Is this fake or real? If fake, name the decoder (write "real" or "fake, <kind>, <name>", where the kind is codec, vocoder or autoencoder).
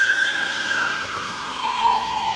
fake, codec, SNAC